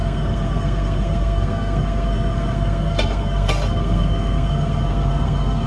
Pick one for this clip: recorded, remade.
remade